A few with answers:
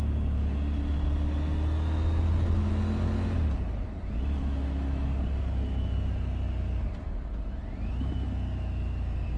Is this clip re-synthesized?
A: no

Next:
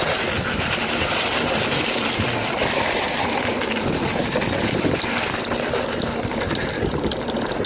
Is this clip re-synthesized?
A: no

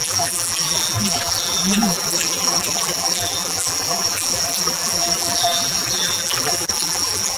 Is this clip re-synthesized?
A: yes